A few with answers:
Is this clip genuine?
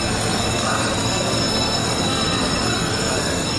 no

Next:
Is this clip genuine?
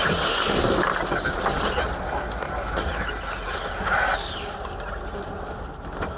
yes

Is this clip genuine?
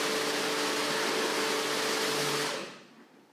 yes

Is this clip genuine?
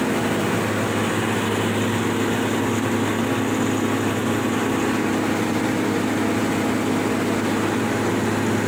yes